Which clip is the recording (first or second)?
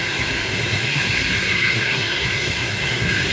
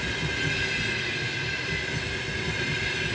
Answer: second